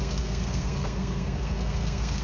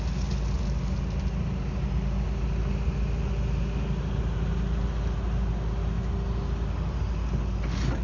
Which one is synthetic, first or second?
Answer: first